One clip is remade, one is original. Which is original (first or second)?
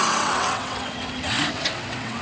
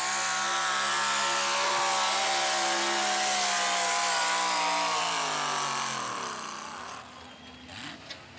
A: second